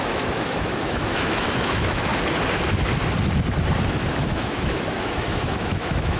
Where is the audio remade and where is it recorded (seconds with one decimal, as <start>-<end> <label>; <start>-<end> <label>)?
0.0-2.1 remade; 2.1-4.1 recorded; 4.1-6.2 remade

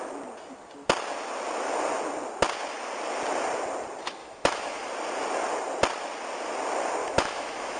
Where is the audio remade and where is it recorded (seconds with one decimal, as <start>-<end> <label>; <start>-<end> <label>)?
0.0-4.2 recorded; 4.2-4.9 remade; 4.9-7.0 recorded; 7.0-7.8 remade